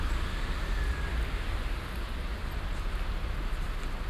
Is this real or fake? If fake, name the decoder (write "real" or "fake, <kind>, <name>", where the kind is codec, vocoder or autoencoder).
real